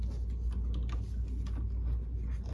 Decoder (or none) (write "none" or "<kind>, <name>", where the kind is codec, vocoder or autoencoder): none